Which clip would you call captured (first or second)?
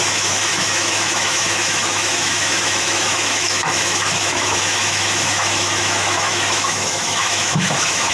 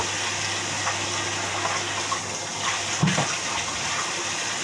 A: second